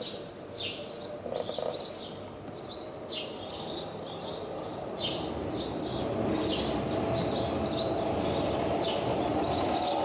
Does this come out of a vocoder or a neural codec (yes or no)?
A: no